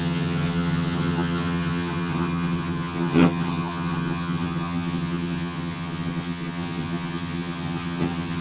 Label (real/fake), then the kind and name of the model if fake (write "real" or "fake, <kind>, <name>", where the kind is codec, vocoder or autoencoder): fake, vocoder, HiFi-GAN